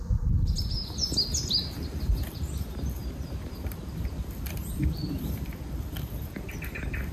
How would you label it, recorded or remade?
recorded